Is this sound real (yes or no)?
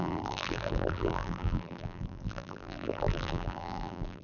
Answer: no